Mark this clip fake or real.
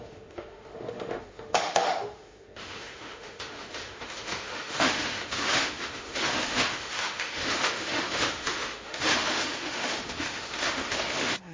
fake